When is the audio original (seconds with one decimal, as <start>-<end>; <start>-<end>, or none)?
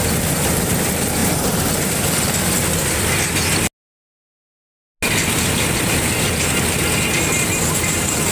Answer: 0.0-8.3